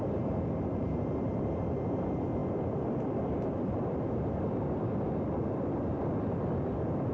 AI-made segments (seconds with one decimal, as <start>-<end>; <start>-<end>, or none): none